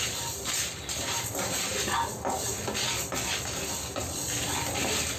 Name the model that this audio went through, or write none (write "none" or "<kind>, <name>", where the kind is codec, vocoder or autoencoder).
none